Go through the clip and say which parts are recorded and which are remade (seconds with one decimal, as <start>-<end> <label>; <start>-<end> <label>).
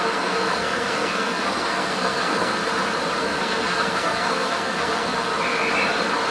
0.0-2.6 remade; 2.6-3.2 recorded; 3.2-5.3 remade; 5.3-6.3 recorded